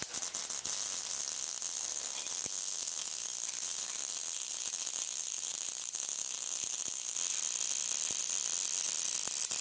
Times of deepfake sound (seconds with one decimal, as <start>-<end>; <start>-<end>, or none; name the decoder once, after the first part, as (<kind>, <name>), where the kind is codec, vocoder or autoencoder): 1.2-2.3 (vocoder, BigVGAN v2); 3.0-6.1; 8.2-9.6

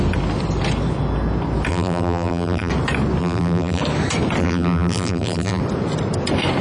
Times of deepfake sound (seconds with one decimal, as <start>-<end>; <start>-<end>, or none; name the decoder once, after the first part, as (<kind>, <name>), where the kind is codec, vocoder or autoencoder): 1.7-2.7 (vocoder, BigVGAN v2); 3.2-3.8; 4.4-5.6

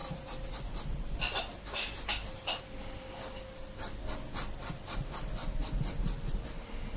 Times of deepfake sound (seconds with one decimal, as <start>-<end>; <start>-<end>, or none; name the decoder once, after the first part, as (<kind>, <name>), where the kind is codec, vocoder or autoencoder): 0.0-1.2 (vocoder, BigVGAN v2)

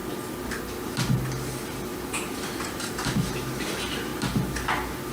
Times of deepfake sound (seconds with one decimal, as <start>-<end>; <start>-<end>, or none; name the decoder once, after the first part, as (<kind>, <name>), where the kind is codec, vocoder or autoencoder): none

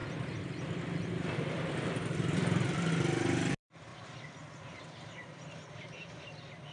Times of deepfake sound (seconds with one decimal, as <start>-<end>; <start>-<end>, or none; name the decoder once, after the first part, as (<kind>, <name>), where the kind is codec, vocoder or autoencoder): 0.0-2.9 (vocoder, BigVGAN v2); 3.9-4.8

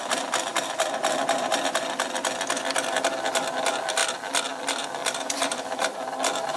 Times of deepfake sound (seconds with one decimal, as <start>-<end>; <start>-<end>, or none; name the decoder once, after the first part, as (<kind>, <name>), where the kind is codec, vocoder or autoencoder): 5.0-5.8 (vocoder, BigVGAN v2)

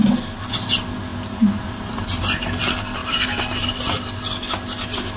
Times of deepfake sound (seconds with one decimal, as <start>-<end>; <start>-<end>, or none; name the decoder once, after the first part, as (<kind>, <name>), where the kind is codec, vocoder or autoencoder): 1.1-2.6 (vocoder, BigVGAN v2); 3.0-4.0